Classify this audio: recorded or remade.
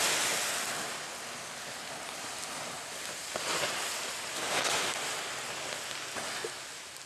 recorded